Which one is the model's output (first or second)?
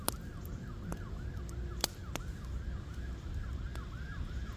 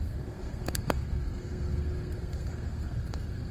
second